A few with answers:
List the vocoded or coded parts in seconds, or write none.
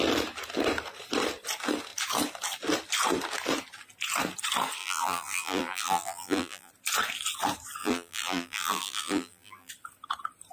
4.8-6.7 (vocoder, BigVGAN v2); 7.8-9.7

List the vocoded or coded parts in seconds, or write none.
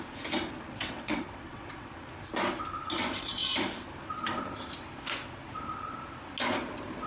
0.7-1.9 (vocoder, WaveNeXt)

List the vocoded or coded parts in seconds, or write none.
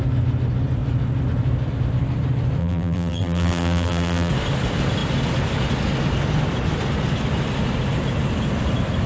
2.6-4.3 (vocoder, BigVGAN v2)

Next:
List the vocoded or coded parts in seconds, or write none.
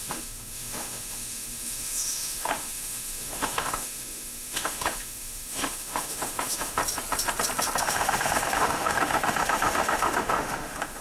0.0-6.8 (autoencoder, DAC-VAE); 7.8-11.0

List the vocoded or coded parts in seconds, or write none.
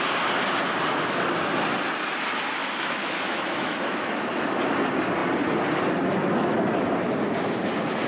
2.6-4.2 (autoencoder, DAC-VAE)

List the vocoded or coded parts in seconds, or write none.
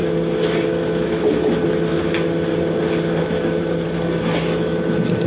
3.2-3.6 (autoencoder, DAC-VAE); 4.4-5.3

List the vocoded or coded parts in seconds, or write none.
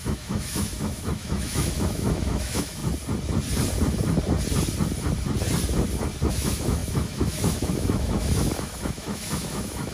0.0-2.8 (autoencoder, DAC-VAE); 6.3-9.9